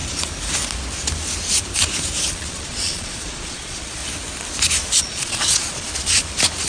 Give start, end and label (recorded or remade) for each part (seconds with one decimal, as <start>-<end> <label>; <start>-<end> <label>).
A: 0.0-2.3 recorded; 2.3-4.0 remade; 4.0-5.0 recorded; 5.0-5.9 remade; 5.9-6.7 recorded